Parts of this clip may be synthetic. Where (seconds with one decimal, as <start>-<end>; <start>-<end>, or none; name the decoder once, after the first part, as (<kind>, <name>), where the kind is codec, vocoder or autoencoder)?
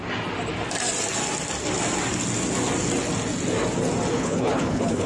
4.1-5.1 (codec, HILCodec)